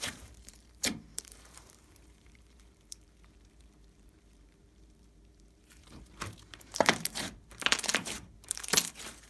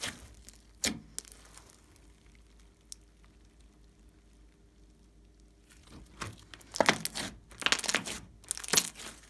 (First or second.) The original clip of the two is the second